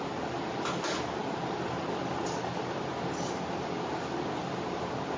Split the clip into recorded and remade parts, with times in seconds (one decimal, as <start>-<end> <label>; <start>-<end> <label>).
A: 0.0-5.2 recorded